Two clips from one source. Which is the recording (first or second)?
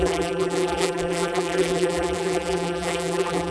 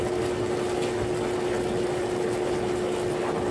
second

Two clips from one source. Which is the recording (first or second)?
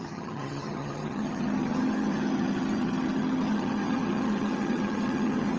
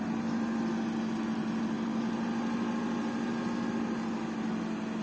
second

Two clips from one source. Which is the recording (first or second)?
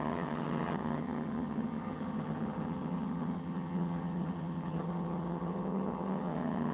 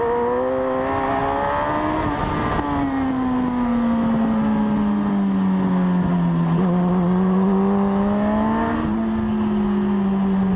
second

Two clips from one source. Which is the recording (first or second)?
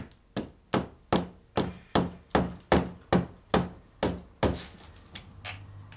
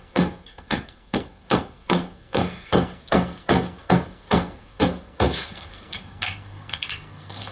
first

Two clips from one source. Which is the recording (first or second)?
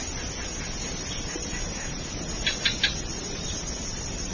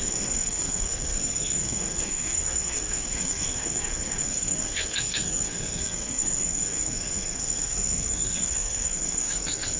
first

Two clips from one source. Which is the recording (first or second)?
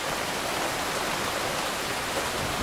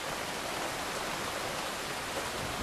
first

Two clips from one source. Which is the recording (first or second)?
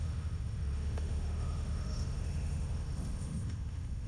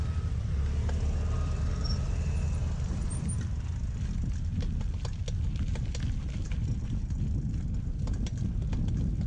second